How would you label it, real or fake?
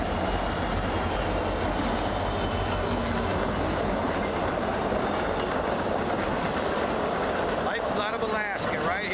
real